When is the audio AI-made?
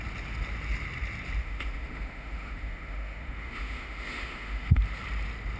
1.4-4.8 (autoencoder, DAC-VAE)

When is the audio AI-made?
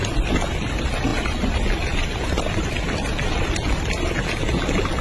none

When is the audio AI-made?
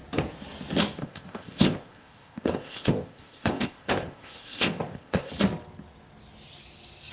1.0-5.3 (codec, ZipCodec)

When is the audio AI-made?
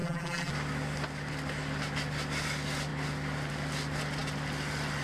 0.0-0.5 (vocoder, BigVGAN v2)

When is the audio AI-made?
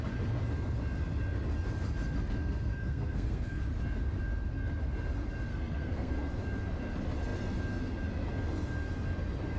2.4-3.6 (codec, SNAC); 5.5-6.1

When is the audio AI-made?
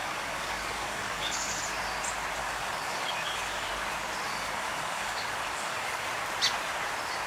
0.0-1.6 (codec, DAC); 2.4-3.7; 4.3-6.1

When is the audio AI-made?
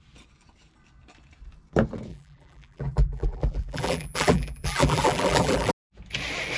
2.1-5.7 (vocoder, BigVGAN v2)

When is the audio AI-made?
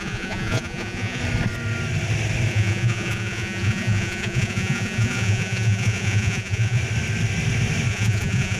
0.0-1.2 (vocoder, Vocos); 2.5-6.8; 7.9-8.6